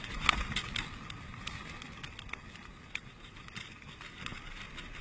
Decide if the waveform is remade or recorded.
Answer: recorded